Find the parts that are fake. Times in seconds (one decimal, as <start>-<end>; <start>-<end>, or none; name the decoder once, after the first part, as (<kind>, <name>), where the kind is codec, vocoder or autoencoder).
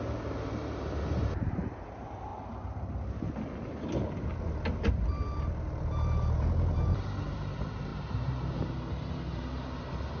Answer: 0.0-2.3 (vocoder, BigVGAN v2); 4.9-10.2